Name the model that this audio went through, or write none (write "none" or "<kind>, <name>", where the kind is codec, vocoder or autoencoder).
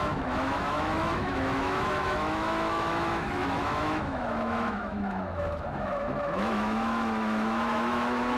autoencoder, DAC-VAE